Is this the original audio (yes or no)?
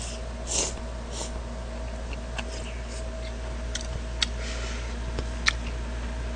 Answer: yes